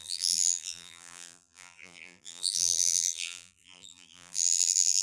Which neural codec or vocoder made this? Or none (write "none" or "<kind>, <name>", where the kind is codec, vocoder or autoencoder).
vocoder, BigVGAN v2